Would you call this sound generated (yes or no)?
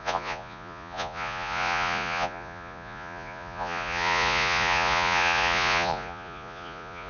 yes